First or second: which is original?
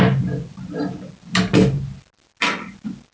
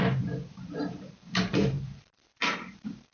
first